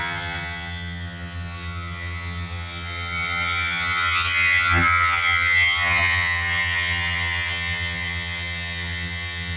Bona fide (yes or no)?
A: no